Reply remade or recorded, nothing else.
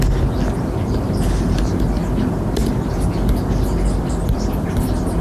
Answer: recorded